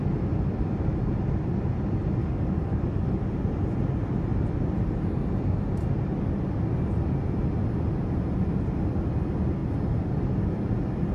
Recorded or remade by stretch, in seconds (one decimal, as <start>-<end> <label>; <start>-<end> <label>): 0.0-2.2 recorded; 2.2-3.2 remade; 3.2-11.1 recorded